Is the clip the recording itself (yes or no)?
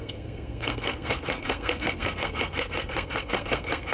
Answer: no